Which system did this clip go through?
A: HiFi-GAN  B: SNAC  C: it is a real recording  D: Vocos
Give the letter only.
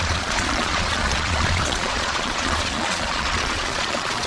D